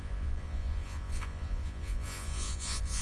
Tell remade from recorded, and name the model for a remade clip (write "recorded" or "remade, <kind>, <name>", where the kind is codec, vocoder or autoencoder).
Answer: remade, vocoder, Vocos